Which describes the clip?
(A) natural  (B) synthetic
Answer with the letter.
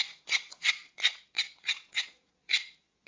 B